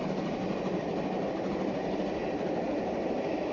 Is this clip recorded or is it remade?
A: recorded